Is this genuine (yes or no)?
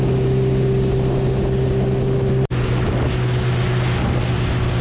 yes